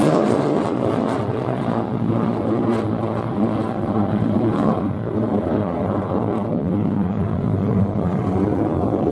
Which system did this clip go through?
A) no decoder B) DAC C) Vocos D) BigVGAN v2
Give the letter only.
C